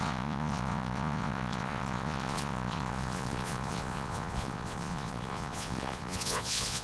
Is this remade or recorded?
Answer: remade